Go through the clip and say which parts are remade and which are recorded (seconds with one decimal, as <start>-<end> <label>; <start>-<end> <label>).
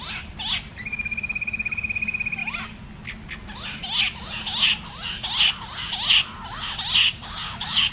0.0-7.0 recorded; 7.0-7.9 remade